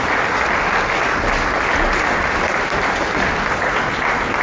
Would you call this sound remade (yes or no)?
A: no